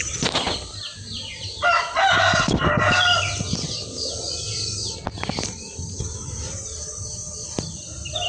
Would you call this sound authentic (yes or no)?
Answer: yes